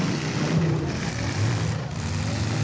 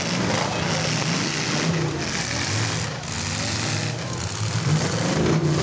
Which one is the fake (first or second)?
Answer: first